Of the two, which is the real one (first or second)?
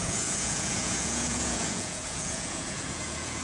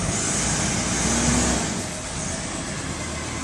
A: second